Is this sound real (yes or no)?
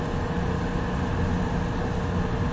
yes